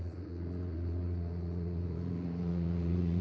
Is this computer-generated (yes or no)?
yes